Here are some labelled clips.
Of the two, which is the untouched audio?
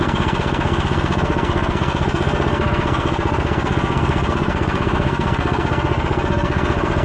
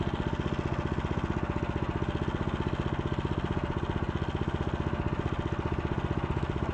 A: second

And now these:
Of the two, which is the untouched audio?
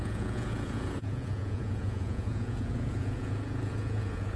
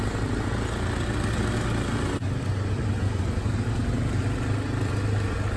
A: second